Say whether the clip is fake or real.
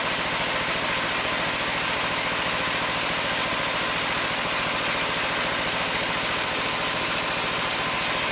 real